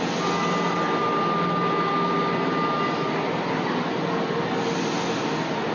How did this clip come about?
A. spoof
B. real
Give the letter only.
B